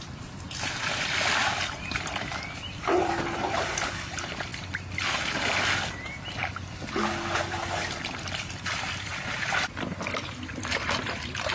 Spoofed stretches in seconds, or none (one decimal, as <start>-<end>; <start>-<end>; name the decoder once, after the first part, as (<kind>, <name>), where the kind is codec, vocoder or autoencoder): 0.0-4.5 (vocoder, BigVGAN v2); 6.0-6.4; 7.4-9.1; 10.7-11.5